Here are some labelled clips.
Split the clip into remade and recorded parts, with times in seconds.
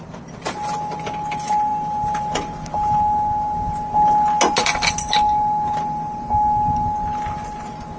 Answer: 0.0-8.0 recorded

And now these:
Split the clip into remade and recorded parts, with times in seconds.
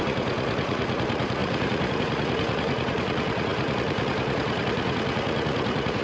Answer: 0.0-6.0 remade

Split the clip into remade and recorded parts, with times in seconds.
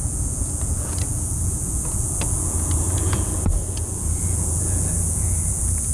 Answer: 0.0-5.9 remade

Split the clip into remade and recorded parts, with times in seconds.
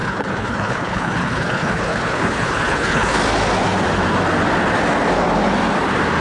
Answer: 0.0-3.2 remade; 3.2-6.2 recorded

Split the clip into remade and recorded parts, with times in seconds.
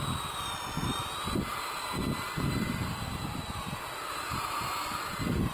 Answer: 0.0-1.5 recorded; 1.5-4.6 remade; 4.6-5.5 recorded